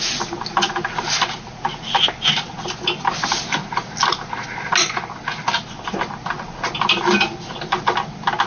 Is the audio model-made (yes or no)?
no